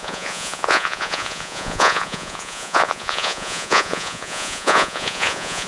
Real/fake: fake